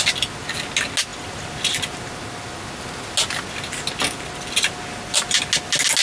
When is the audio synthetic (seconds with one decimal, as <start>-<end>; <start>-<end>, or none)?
none